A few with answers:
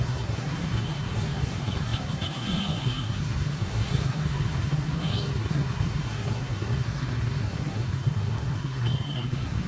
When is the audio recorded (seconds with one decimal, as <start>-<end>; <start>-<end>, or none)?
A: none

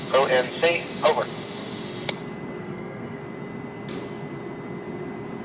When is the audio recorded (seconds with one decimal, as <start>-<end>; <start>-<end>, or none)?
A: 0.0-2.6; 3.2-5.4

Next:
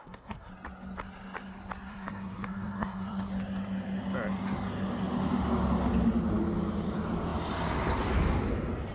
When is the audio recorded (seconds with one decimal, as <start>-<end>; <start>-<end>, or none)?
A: 0.5-1.9; 3.3-8.9

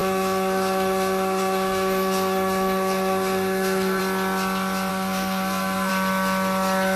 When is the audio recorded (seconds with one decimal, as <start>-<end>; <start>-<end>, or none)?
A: 4.0-4.9; 5.9-7.0

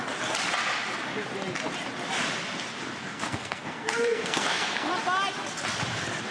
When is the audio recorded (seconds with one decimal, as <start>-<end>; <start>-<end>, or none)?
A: 0.0-3.0; 4.9-6.3